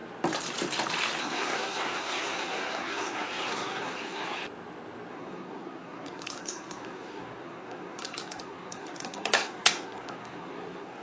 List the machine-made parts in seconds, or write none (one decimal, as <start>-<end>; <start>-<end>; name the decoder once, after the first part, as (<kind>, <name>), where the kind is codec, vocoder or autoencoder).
1.2-4.4 (codec, SNAC); 5.1-11.0